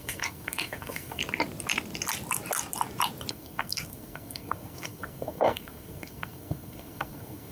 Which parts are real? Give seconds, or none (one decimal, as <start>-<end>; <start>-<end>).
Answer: 1.2-3.3